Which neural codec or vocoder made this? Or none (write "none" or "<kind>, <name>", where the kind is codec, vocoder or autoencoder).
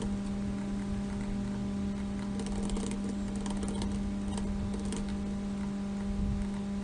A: none